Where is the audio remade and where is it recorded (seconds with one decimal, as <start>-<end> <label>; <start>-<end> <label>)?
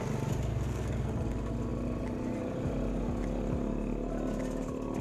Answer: 0.0-0.5 recorded; 0.5-1.1 remade; 1.1-5.0 recorded